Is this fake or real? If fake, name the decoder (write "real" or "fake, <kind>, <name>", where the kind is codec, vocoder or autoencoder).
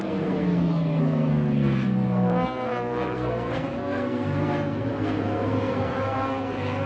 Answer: fake, codec, SNAC